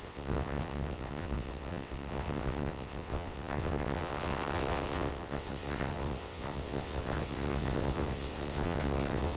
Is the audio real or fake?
fake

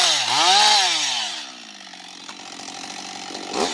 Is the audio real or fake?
real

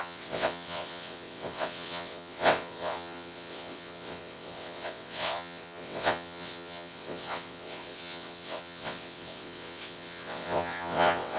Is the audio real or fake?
fake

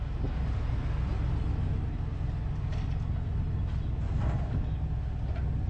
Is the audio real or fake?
real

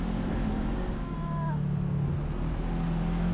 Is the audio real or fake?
real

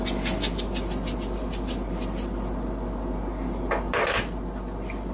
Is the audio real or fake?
real